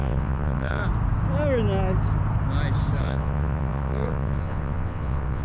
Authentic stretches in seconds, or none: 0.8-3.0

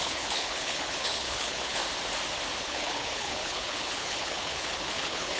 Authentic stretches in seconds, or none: 1.8-2.6

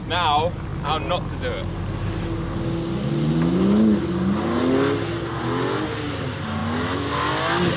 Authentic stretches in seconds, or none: 0.0-7.8

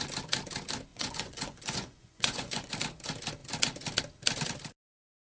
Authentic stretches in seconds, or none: 0.0-0.9; 2.7-5.2

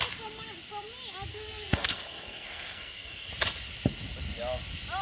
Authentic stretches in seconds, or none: 0.0-1.3; 3.3-5.0

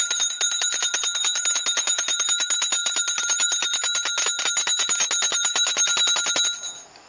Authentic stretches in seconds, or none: 0.0-7.1